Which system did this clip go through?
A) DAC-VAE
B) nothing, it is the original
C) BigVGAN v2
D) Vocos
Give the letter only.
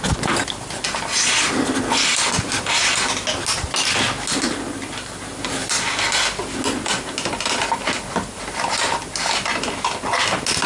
B